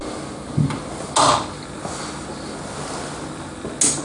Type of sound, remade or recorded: recorded